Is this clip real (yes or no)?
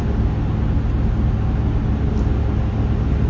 yes